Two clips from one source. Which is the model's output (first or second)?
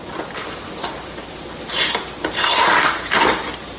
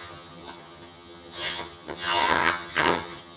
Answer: second